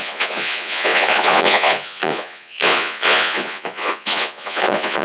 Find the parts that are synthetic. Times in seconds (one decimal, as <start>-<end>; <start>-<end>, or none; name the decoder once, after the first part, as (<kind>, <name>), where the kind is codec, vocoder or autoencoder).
0.0-5.0 (vocoder, Vocos)